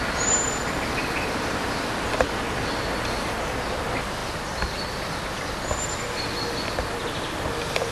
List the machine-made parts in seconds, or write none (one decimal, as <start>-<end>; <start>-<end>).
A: 1.0-2.4; 4.2-5.3; 7.0-7.9

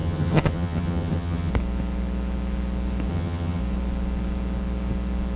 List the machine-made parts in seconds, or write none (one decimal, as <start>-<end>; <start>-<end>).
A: 0.0-1.5; 3.1-3.6

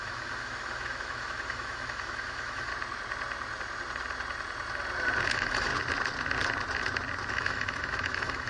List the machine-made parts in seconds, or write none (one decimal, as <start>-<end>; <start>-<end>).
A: 0.0-2.7; 5.3-5.7; 7.3-8.5